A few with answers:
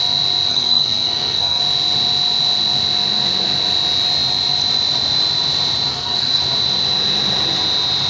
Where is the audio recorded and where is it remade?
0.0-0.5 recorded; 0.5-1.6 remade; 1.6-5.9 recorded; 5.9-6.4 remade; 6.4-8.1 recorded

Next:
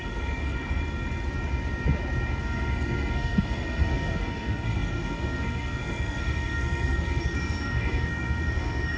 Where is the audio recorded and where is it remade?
0.0-0.8 remade; 0.8-2.4 recorded; 2.4-9.0 remade

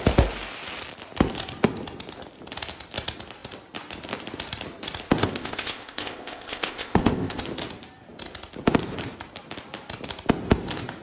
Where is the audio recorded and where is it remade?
0.0-5.2 recorded; 5.2-7.4 remade; 7.4-11.0 recorded

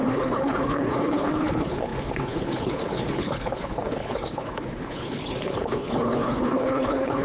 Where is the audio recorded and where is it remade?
0.0-7.2 remade

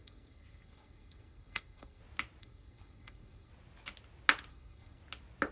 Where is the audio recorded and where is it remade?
0.0-2.0 remade; 2.0-2.4 recorded; 2.4-3.5 remade; 3.5-4.5 recorded; 4.5-5.0 remade; 5.0-5.5 recorded

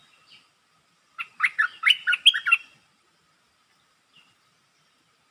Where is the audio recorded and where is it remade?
0.0-5.3 recorded